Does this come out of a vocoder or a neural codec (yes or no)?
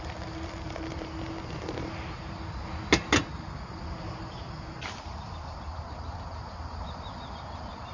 no